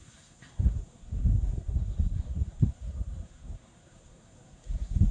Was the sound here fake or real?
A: fake